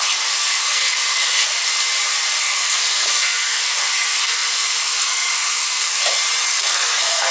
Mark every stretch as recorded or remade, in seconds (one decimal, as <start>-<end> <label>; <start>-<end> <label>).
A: 0.0-1.7 remade; 1.7-2.4 recorded; 2.4-6.0 remade; 6.0-6.5 recorded; 6.5-7.3 remade